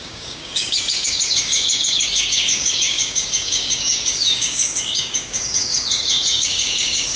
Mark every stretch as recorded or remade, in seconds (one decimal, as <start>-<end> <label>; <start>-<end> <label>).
0.0-7.2 remade